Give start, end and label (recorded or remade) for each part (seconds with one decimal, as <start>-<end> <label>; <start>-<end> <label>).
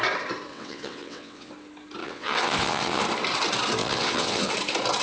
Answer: 0.0-0.5 recorded; 0.5-1.5 remade; 1.5-2.0 recorded; 2.0-3.0 remade; 3.0-3.8 recorded; 3.8-4.5 remade; 4.5-5.0 recorded